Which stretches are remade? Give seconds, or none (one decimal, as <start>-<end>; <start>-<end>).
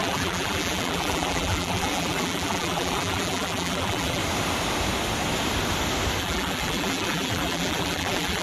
0.0-4.2; 6.2-8.4